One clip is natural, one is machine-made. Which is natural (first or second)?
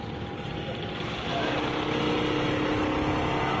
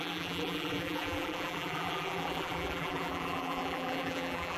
first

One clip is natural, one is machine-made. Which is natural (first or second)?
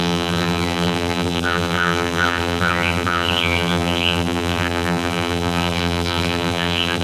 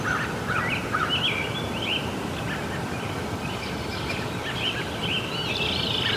second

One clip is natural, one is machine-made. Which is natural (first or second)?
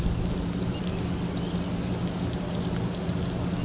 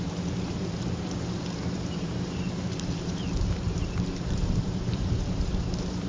first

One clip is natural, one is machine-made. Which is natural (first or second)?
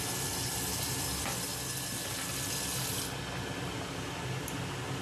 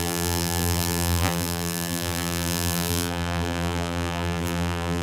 first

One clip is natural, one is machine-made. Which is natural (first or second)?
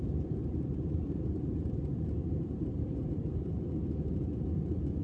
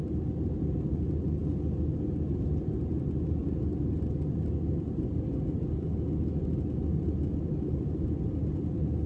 second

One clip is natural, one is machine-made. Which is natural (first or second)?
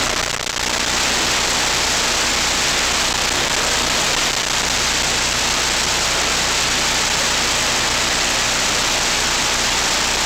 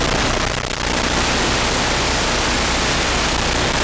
first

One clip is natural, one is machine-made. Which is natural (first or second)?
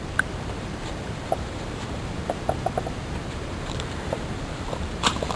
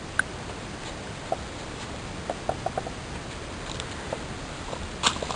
second